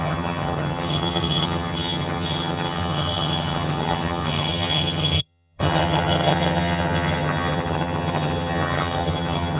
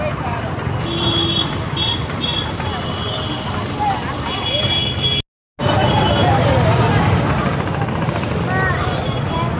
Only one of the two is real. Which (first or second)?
second